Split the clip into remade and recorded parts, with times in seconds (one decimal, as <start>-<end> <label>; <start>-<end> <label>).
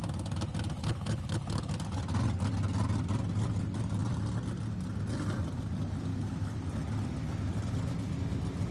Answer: 0.0-0.8 recorded; 0.8-1.6 remade; 1.6-6.1 recorded; 6.1-6.6 remade; 6.6-8.7 recorded